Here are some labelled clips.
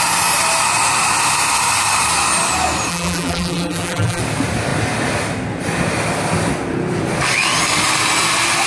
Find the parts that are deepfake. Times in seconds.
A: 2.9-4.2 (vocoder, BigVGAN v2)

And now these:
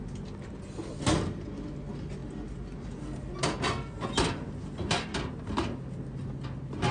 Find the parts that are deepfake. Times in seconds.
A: none

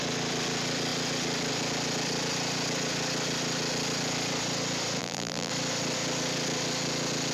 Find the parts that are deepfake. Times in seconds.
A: 5.0-5.5 (vocoder, BigVGAN v2)

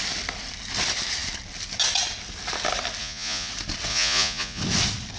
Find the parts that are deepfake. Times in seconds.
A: 3.0-3.5 (vocoder, Vocos); 3.9-4.6